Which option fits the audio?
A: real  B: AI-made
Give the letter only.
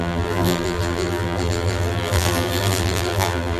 B